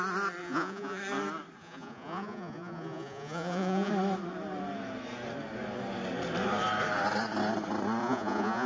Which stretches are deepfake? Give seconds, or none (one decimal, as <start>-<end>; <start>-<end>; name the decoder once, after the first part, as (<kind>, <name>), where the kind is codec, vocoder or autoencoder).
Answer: 0.4-1.0 (vocoder, Vocos); 1.6-3.9; 8.0-8.7